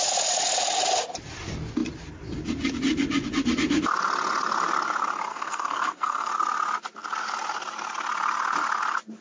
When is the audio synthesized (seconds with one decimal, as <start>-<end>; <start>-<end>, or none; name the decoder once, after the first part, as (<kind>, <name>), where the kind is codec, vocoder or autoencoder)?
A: 5.3-6.3 (codec, SNAC)